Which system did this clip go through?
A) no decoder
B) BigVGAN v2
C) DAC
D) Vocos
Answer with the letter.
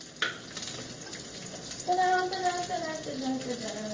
A